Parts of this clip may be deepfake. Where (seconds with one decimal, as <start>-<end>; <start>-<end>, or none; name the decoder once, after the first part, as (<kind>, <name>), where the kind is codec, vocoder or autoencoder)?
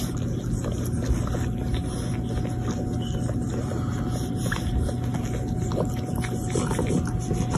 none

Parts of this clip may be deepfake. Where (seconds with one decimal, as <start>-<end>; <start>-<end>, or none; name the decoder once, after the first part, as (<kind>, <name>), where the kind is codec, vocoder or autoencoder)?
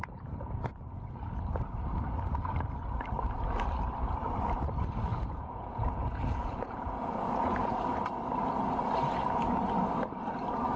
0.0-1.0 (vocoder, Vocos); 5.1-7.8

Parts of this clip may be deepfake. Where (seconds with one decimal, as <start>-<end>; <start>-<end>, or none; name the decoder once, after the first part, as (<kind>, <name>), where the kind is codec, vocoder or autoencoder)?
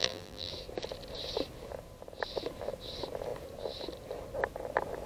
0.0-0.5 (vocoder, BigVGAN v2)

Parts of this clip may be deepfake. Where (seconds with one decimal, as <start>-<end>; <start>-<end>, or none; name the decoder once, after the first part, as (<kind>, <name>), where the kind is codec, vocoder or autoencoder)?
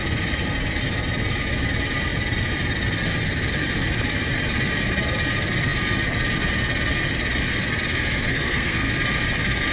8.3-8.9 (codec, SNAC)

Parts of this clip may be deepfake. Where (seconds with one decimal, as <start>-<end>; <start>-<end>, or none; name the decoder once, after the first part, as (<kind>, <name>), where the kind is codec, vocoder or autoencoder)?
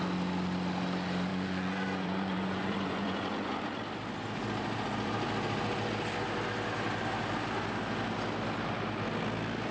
1.3-3.6 (vocoder, Vocos)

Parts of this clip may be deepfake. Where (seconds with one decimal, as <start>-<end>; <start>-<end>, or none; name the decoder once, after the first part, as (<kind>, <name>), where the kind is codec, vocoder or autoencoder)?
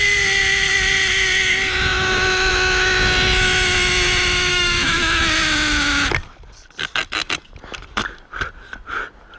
4.5-5.2 (autoencoder, DAC-VAE)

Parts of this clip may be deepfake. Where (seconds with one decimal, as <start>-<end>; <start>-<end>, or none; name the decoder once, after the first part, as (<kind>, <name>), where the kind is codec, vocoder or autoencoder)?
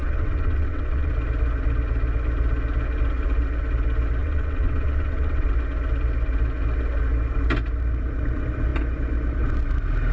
0.0-1.1 (vocoder, WaveNeXt); 4.2-5.5